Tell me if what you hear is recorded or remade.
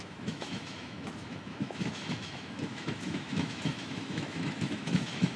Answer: remade